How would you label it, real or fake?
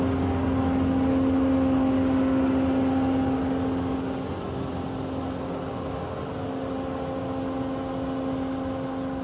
real